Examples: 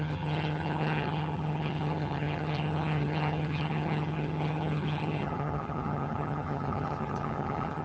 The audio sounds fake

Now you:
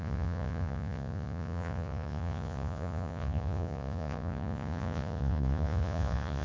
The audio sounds fake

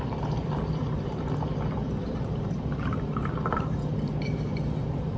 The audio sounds fake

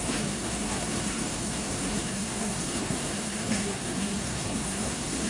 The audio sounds fake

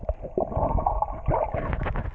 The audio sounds real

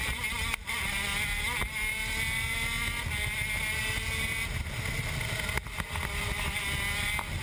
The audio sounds real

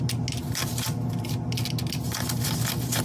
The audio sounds real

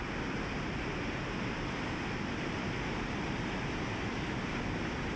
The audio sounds real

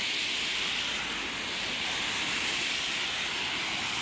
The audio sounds fake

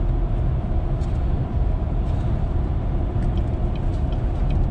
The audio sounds fake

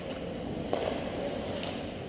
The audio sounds real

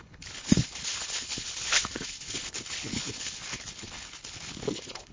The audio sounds fake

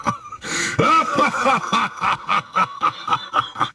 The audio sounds fake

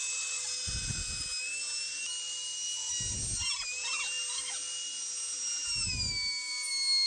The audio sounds real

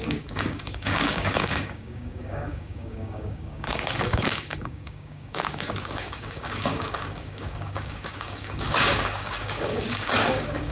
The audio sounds fake